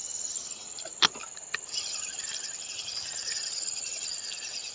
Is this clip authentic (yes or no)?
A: yes